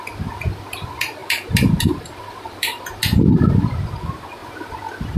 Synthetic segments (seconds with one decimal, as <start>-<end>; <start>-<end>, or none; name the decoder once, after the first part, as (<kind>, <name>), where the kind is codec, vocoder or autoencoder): 1.2-3.0 (vocoder, BigVGAN v2)